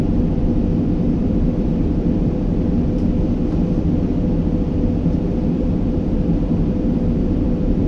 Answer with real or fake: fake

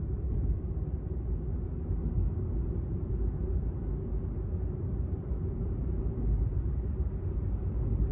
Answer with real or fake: real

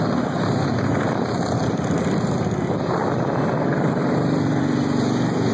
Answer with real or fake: real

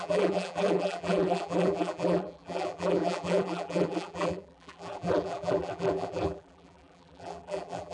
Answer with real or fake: fake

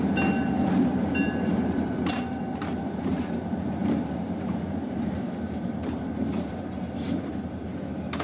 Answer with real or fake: fake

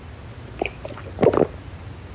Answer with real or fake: real